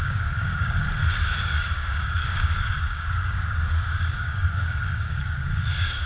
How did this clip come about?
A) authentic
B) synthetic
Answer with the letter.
B